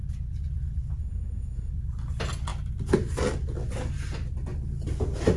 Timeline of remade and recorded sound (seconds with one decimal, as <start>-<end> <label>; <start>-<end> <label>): 0.0-1.0 recorded; 1.0-1.7 remade; 1.7-5.4 recorded